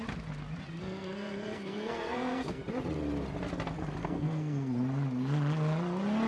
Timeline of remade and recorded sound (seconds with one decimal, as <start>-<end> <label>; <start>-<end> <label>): 0.0-0.8 recorded; 0.8-2.6 remade; 2.6-4.0 recorded; 4.0-4.7 remade; 4.7-6.3 recorded

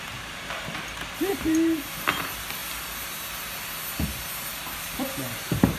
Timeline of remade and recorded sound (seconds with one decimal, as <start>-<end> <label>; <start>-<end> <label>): 0.0-2.6 remade; 2.6-4.8 recorded; 4.8-5.8 remade

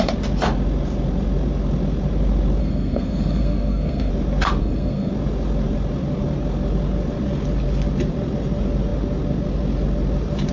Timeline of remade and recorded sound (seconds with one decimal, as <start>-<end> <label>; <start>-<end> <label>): 0.0-2.6 recorded; 2.6-4.1 remade; 4.1-4.6 recorded; 4.6-5.1 remade; 5.1-10.5 recorded

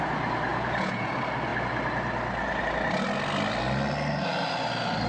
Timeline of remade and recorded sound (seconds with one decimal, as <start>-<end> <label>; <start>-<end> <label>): 0.0-0.5 recorded; 0.5-1.1 remade; 1.1-5.1 recorded

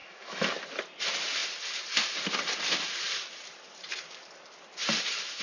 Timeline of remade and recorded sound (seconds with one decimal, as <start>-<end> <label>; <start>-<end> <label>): 0.0-0.5 remade; 0.5-5.4 recorded

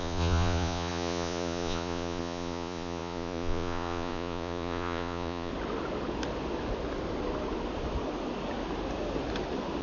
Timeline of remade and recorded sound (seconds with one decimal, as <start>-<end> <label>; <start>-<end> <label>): 0.0-5.5 remade; 5.5-9.8 recorded